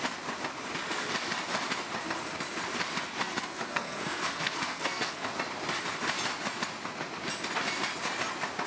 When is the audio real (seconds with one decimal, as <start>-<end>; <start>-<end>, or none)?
0.0-3.2; 5.3-8.7